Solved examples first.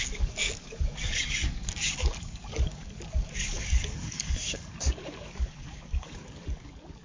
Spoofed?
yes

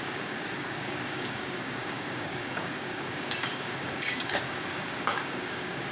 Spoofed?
yes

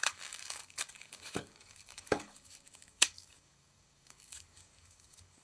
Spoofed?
yes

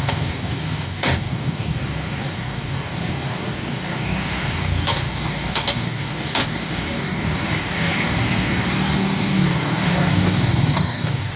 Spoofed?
yes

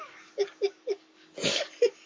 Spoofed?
yes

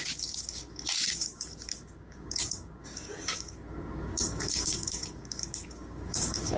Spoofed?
yes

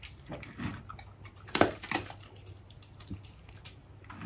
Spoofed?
no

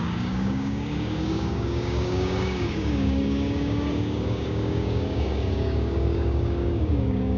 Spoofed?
yes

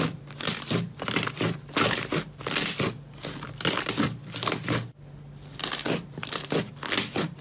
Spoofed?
no